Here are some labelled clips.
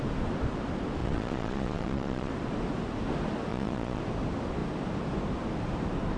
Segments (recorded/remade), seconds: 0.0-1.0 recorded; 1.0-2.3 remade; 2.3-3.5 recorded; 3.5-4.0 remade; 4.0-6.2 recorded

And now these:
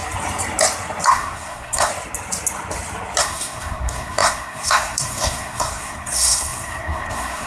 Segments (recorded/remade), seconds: 0.0-1.1 recorded; 1.1-1.9 remade; 1.9-3.2 recorded; 3.2-7.5 remade

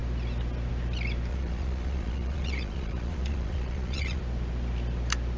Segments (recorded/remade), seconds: 0.0-1.3 recorded; 1.3-4.2 remade; 4.2-5.4 recorded

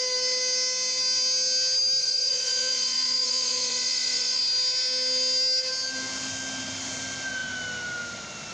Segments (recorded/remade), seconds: 0.0-2.0 recorded; 2.0-4.4 remade; 4.4-8.5 recorded

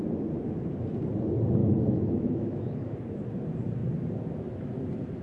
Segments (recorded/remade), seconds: 0.0-1.6 recorded; 1.6-3.2 remade; 3.2-5.2 recorded

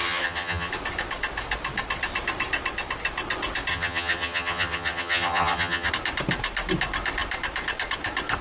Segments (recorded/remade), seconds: 0.0-0.7 remade; 0.7-3.7 recorded; 3.7-5.9 remade; 5.9-8.4 recorded